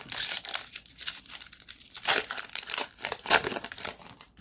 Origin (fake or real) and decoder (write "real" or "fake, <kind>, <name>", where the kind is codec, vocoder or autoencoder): fake, vocoder, BigVGAN v2